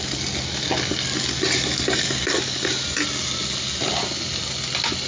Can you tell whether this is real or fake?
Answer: real